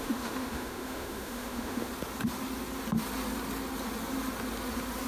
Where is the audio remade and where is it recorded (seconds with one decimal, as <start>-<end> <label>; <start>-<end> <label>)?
0.0-1.9 remade; 1.9-5.1 recorded